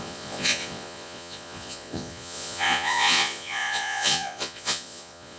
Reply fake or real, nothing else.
fake